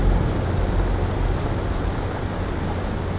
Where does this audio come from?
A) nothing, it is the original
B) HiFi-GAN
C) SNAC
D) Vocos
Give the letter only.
A